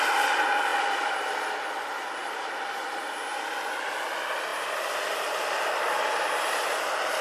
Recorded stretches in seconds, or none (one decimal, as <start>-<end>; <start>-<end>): 0.0-0.7; 1.3-2.2; 2.8-4.5; 6.1-7.2